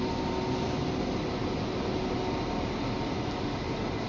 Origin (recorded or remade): recorded